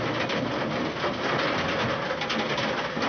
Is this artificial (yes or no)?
no